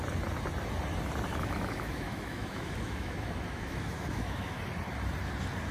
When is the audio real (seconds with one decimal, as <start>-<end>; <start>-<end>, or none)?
0.0-1.3; 4.6-5.7